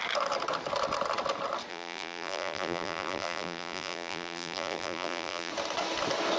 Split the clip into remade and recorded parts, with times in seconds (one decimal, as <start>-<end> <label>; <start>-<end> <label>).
0.0-1.7 recorded; 1.7-5.5 remade; 5.5-6.4 recorded